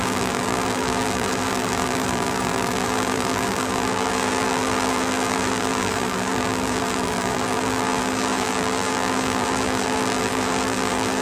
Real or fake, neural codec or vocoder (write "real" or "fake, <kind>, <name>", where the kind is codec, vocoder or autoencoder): fake, vocoder, BigVGAN v2